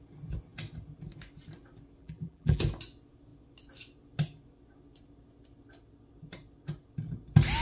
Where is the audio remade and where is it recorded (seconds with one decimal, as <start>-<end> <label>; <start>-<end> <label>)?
0.0-2.0 recorded; 2.0-2.6 remade; 2.6-7.6 recorded